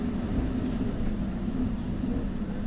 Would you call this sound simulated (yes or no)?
no